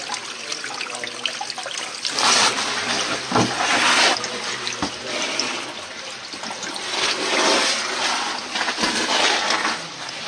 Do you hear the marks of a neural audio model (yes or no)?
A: no